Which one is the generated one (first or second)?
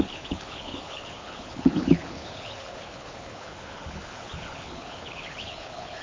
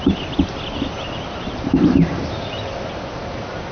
first